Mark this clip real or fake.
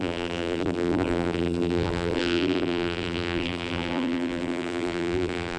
fake